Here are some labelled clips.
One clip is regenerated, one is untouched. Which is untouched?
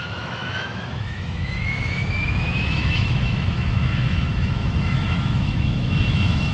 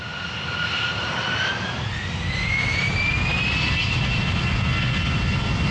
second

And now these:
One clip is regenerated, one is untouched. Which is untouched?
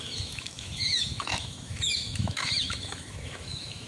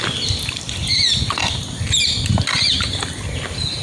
second